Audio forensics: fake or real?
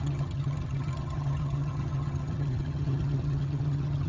fake